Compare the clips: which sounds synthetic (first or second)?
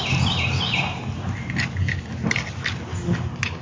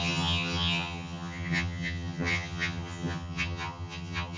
second